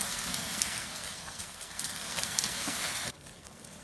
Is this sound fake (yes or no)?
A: yes